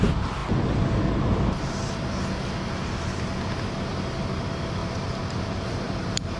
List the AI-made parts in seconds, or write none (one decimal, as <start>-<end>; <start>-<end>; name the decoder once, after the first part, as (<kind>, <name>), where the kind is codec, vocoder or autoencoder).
4.8-6.4 (vocoder, BigVGAN v2)